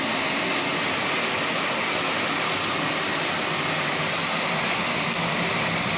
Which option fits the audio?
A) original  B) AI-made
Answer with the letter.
A